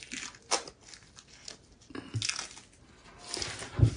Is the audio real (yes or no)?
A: yes